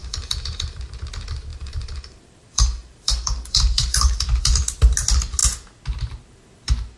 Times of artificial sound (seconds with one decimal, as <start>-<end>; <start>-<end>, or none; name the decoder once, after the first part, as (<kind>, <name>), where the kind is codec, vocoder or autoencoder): 0.0-0.8 (vocoder, BigVGAN v2); 1.5-4.4